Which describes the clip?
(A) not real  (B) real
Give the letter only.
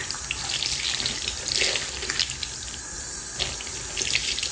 B